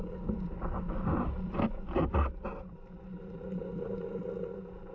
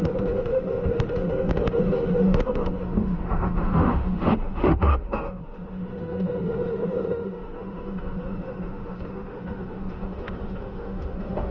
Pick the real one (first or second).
first